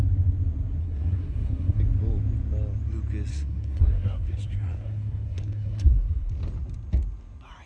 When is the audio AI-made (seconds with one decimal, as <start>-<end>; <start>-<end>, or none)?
0.8-1.8; 3.3-6.3